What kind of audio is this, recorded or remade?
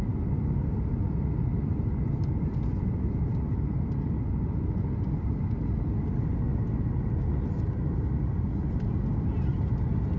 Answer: recorded